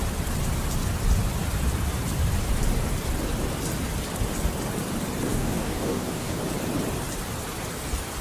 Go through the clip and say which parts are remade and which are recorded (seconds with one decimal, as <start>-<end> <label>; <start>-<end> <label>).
0.0-5.3 recorded; 5.3-6.4 remade; 6.4-8.2 recorded